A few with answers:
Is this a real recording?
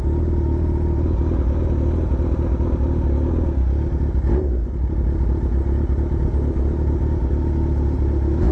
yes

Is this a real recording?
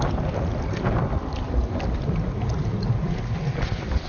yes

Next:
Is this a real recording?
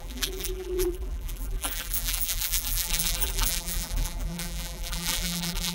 no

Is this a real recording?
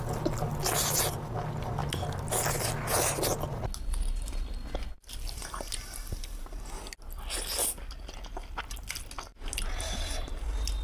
yes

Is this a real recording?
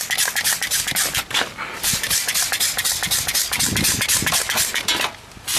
yes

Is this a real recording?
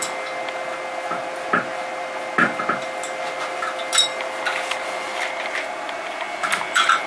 yes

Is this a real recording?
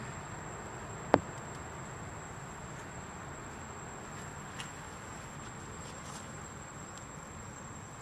yes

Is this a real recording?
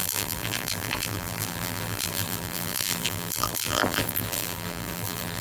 no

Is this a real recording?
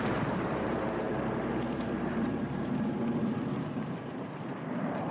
no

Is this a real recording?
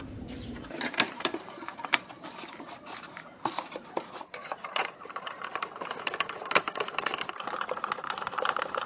no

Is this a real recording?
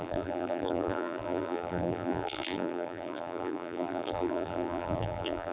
no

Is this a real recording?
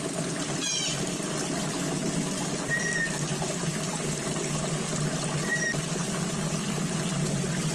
yes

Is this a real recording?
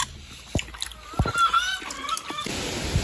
yes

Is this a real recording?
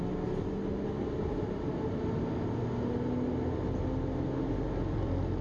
yes